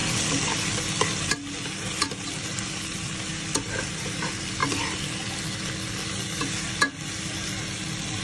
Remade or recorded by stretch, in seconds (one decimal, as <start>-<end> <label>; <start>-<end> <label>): 0.0-8.2 recorded